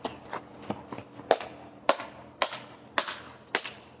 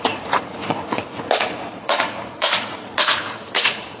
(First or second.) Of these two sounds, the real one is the first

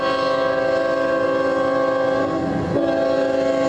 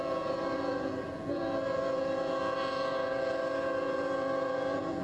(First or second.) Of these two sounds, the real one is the first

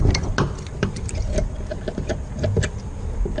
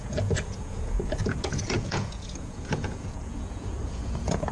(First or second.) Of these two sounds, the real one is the first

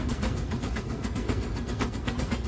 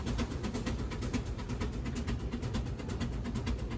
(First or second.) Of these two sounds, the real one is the second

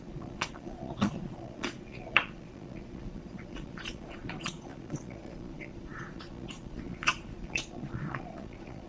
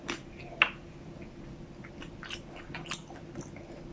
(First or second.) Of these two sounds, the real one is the second